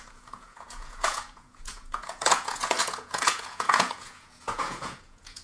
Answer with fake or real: fake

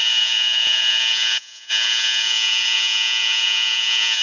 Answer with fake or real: fake